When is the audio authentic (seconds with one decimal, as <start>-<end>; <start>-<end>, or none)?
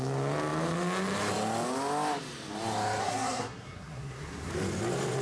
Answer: 0.0-3.0; 4.5-5.2